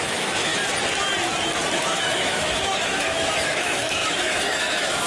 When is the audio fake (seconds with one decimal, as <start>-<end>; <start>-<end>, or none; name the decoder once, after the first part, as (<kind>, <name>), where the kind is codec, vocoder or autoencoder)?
0.0-0.5 (autoencoder, DAC-VAE); 1.8-5.1